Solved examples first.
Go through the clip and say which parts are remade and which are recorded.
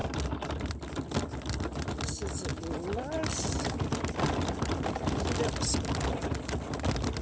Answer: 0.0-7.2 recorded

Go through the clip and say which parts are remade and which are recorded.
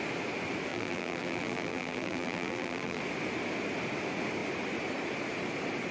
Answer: 0.0-0.7 recorded; 0.7-3.0 remade; 3.0-5.9 recorded